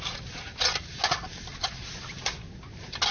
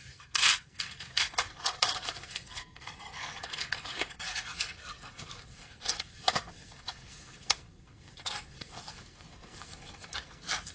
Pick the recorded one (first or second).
first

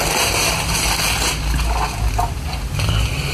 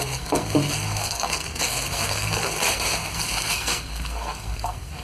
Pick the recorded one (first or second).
first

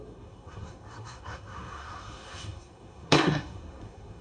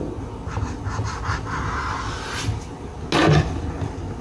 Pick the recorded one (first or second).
second